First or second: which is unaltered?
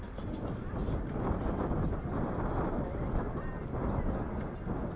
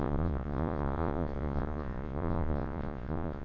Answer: first